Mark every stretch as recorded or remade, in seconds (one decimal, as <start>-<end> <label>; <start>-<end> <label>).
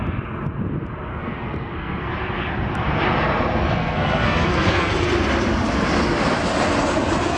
0.0-1.1 recorded; 1.1-2.1 remade; 2.1-3.8 recorded; 3.8-4.9 remade; 4.9-7.4 recorded